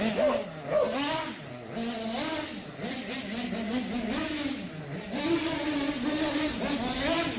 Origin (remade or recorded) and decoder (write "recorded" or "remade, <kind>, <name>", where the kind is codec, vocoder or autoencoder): recorded